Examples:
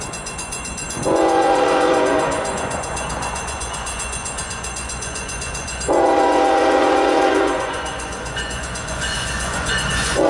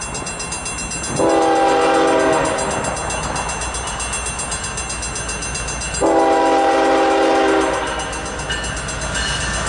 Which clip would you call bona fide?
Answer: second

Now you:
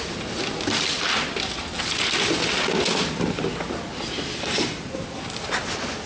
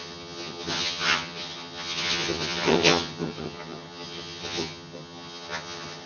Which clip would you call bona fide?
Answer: first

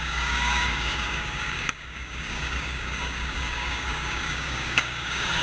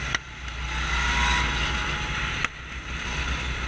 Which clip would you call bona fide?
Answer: second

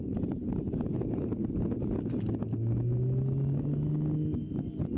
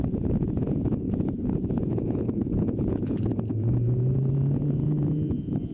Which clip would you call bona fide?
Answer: first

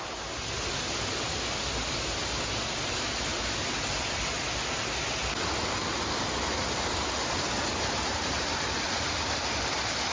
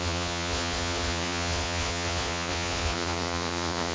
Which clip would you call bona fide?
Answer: first